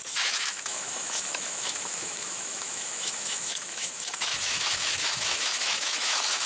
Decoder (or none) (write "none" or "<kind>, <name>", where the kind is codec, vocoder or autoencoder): autoencoder, DAC-VAE